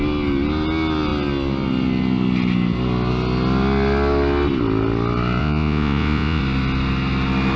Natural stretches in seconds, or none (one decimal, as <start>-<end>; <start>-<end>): 0.0-5.4; 6.4-7.6